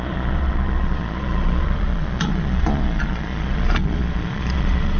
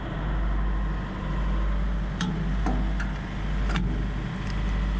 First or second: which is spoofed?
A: first